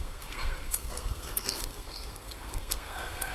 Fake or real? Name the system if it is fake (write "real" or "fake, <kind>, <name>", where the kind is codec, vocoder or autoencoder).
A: fake, codec, SNAC